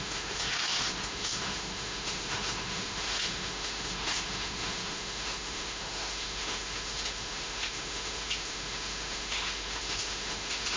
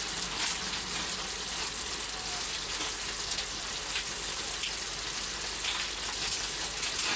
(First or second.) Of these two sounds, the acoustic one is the second